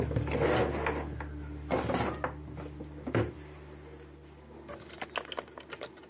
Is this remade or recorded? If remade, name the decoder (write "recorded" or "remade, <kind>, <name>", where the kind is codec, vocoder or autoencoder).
recorded